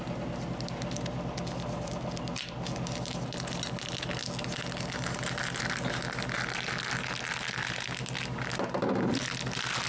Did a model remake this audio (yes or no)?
no